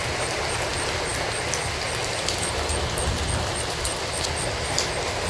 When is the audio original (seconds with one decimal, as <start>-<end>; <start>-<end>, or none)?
0.0-5.3